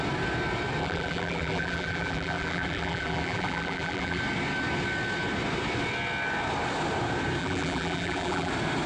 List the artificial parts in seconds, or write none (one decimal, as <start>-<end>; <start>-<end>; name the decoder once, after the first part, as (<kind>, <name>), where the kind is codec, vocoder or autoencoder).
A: 0.8-4.2 (vocoder, BigVGAN v2); 7.4-8.5